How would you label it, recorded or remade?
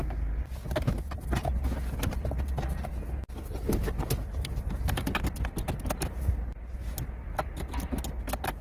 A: recorded